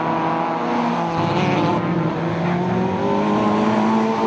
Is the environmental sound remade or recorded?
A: recorded